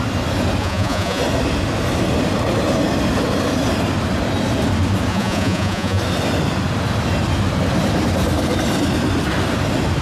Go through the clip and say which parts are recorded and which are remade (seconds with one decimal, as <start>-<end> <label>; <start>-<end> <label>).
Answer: 0.0-0.6 recorded; 0.6-1.2 remade; 1.2-5.1 recorded; 5.1-6.0 remade; 6.0-10.0 recorded

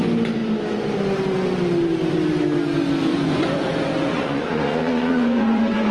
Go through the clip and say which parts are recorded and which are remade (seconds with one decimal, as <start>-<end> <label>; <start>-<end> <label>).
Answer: 0.0-3.1 recorded; 3.1-5.9 remade

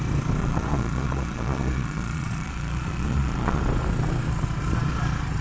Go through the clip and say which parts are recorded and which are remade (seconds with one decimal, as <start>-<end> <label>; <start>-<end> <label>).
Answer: 0.0-0.4 recorded; 0.4-3.6 remade; 3.6-5.4 recorded

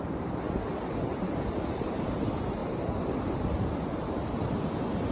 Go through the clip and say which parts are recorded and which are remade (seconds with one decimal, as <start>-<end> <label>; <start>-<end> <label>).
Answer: 0.0-2.6 recorded; 2.6-3.3 remade; 3.3-5.1 recorded

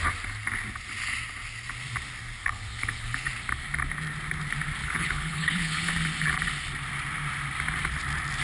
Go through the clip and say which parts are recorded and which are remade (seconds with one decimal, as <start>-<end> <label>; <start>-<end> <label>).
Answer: 0.0-2.4 recorded; 2.4-3.3 remade; 3.3-4.8 recorded; 4.8-5.9 remade; 5.9-8.4 recorded

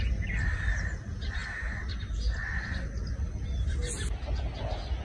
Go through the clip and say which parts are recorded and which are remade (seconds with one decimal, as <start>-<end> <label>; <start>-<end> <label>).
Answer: 0.0-5.0 recorded

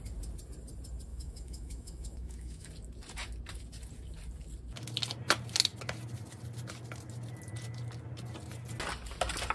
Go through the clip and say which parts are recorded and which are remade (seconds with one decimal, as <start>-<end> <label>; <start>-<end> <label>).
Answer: 0.0-1.1 recorded; 1.1-2.7 remade; 2.7-9.5 recorded